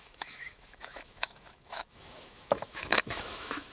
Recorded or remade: remade